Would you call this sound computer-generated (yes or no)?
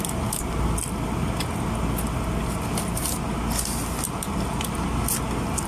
no